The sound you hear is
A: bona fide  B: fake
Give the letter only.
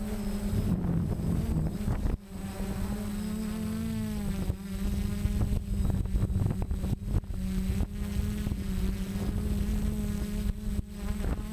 A